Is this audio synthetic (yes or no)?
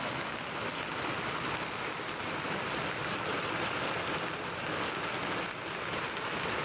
no